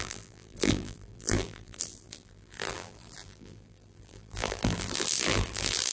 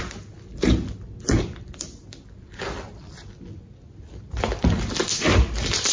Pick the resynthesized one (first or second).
first